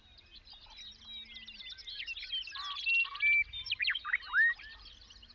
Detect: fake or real real